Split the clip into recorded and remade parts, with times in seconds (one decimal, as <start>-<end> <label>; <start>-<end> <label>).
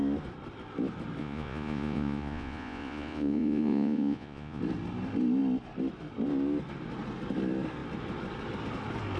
0.0-1.2 recorded; 1.2-4.6 remade; 4.6-9.2 recorded